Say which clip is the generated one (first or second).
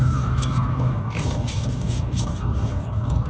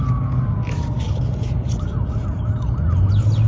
first